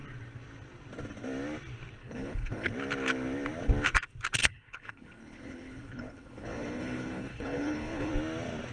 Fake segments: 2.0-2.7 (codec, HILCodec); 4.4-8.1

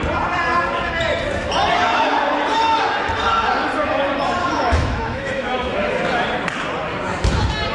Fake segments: 4.4-5.9 (autoencoder, DAC-VAE)

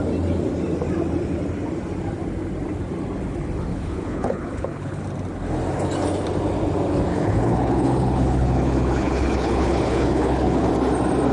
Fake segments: 3.7-5.0 (codec, HILCodec); 7.1-10.7